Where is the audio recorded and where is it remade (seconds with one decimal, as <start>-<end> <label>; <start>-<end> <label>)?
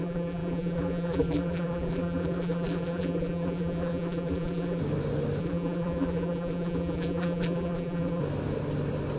0.0-4.8 remade; 4.8-5.4 recorded; 5.4-8.2 remade; 8.2-9.2 recorded